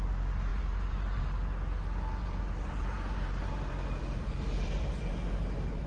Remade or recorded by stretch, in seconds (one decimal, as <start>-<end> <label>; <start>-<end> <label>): 0.0-0.5 recorded; 0.5-1.2 remade; 1.2-2.2 recorded; 2.2-5.9 remade